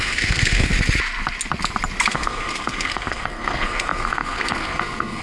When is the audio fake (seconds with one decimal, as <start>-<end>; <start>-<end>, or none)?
0.0-0.7; 2.1-5.2